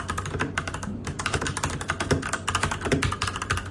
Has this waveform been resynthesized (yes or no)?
no